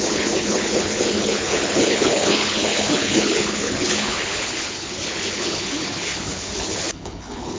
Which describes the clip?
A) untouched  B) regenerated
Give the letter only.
B